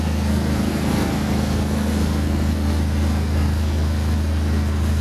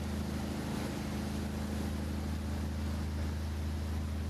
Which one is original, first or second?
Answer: second